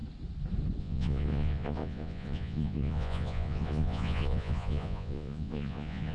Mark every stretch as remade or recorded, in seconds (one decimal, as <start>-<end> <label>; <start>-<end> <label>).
0.0-0.8 recorded; 0.8-6.1 remade